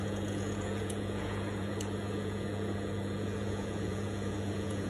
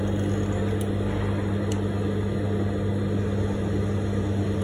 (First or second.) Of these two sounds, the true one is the second